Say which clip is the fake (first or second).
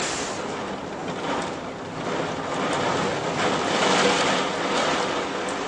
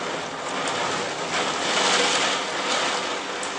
first